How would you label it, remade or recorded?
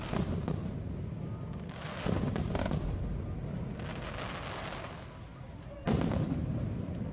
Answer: recorded